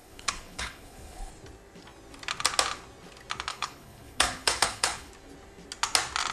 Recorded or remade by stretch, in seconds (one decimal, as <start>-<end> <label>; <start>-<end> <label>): 0.0-1.3 remade; 1.3-3.5 recorded; 3.5-5.1 remade; 5.1-6.3 recorded